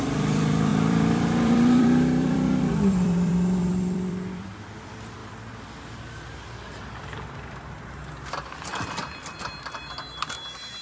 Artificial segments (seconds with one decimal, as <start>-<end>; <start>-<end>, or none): 0.0-5.2; 8.3-10.8